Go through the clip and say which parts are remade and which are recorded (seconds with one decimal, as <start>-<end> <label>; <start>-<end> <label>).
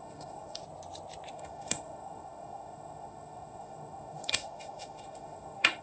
0.0-0.6 remade; 0.6-1.3 recorded; 1.3-5.8 remade